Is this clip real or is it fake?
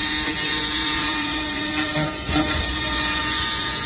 fake